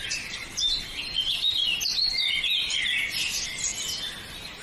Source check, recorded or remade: recorded